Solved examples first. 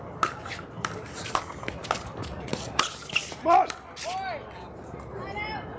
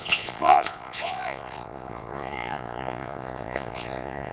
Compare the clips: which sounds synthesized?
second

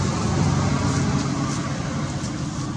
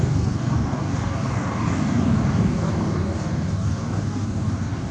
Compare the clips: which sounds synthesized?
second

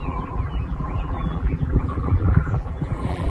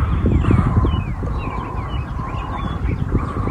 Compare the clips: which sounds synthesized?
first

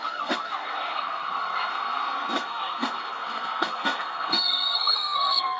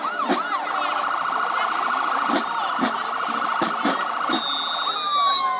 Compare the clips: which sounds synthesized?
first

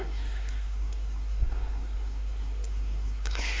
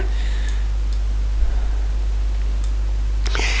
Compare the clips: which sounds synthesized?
first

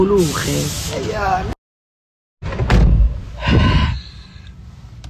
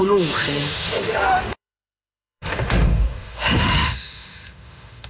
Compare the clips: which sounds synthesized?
second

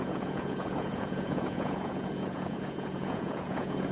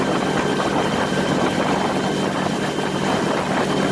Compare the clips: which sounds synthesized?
first